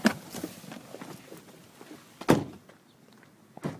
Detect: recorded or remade recorded